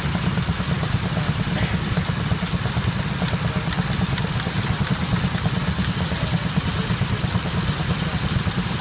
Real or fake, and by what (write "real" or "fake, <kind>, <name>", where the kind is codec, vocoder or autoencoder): real